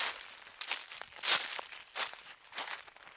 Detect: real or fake real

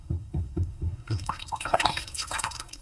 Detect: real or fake fake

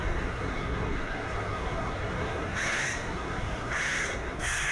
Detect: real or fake fake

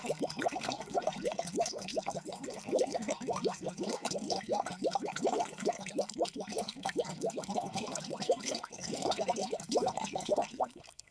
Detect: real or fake fake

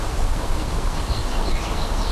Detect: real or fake fake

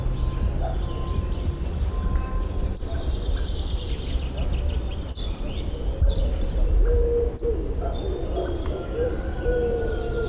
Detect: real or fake real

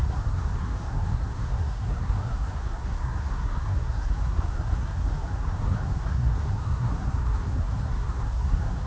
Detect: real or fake fake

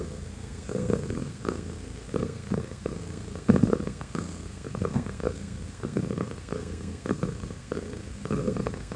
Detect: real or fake fake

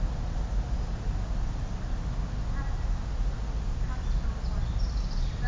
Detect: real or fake real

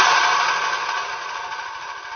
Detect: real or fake real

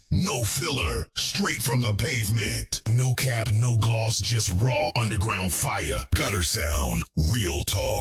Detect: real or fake fake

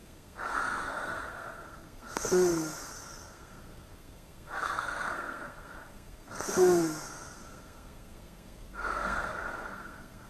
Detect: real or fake fake